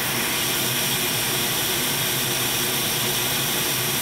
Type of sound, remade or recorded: recorded